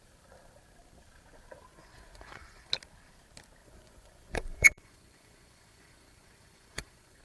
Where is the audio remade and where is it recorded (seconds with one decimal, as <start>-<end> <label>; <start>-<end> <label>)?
0.0-1.7 recorded; 1.7-2.7 remade; 2.7-3.6 recorded; 3.6-7.2 remade